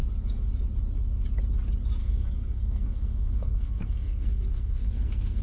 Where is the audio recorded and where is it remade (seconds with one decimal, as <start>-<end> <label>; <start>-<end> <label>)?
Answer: 0.0-2.0 recorded; 2.0-5.4 remade